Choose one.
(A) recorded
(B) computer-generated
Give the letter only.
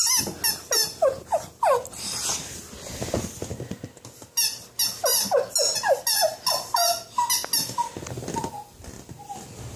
A